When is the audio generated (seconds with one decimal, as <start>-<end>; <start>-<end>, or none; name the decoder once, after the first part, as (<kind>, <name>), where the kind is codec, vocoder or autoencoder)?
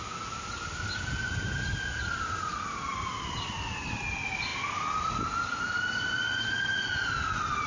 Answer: none